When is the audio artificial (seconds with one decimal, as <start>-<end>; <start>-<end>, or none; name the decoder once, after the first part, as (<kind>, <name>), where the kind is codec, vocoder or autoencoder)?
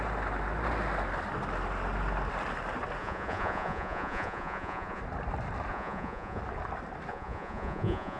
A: 3.0-5.0 (vocoder, Vocos); 5.7-6.4; 7.1-8.2